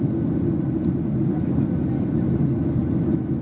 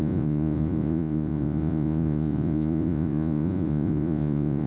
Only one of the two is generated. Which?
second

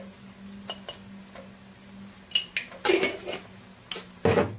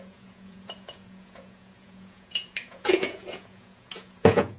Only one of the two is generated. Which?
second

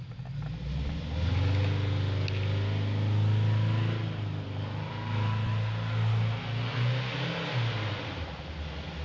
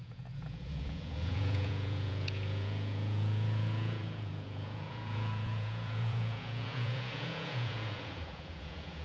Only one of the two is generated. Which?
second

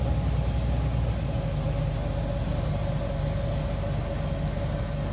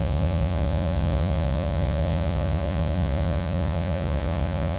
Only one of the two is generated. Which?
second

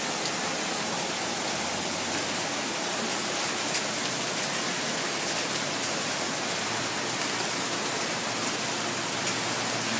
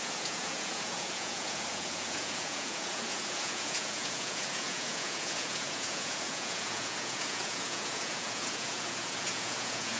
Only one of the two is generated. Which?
second